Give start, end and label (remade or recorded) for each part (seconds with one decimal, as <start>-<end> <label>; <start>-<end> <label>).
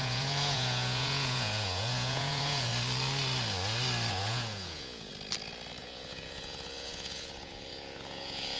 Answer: 0.0-2.7 remade; 2.7-4.1 recorded; 4.1-5.1 remade; 5.1-5.8 recorded; 5.8-8.6 remade